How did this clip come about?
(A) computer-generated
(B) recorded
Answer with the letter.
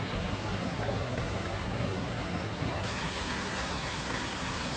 A